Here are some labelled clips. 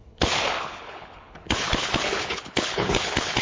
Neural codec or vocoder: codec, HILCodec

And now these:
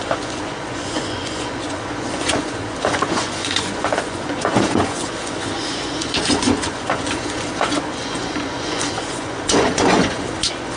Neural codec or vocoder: vocoder, Vocos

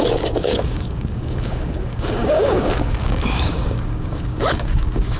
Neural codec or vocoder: codec, DAC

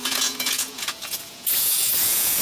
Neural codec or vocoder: vocoder, Vocos